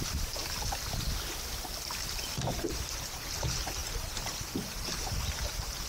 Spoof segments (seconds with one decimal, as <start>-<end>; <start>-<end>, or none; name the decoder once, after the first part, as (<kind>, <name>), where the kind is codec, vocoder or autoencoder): 0.0-0.4 (vocoder, BigVGAN v2); 2.1-5.9